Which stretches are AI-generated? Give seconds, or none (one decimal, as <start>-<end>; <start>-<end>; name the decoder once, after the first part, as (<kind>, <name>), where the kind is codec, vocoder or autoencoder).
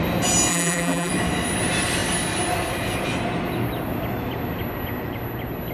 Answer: 0.5-1.1 (vocoder, BigVGAN v2)